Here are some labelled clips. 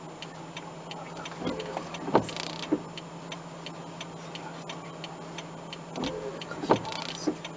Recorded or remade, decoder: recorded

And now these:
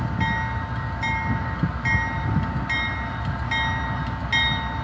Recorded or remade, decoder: recorded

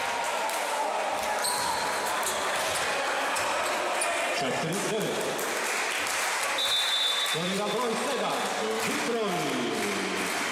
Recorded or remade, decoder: recorded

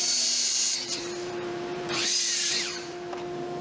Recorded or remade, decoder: remade, vocoder, BigVGAN v2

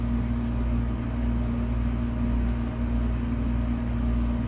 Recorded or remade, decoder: recorded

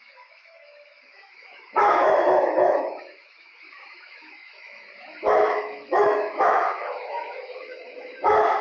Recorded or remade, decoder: remade, autoencoder, DAC-VAE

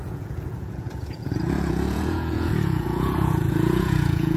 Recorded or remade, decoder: remade, vocoder, Vocos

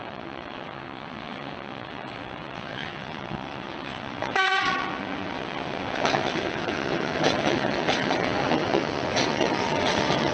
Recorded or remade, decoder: remade, vocoder, WaveNeXt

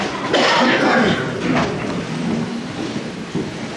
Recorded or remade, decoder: recorded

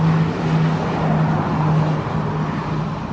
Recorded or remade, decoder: recorded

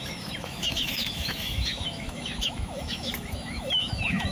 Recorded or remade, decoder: remade, autoencoder, DAC-VAE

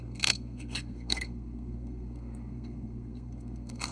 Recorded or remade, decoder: remade, codec, SNAC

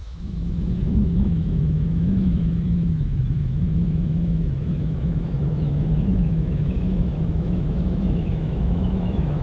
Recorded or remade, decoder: remade, autoencoder, DAC-VAE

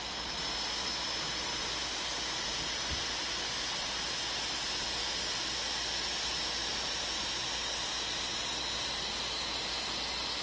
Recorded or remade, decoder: recorded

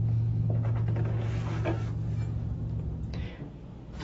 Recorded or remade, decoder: recorded